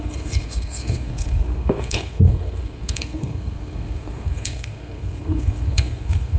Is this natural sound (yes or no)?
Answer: no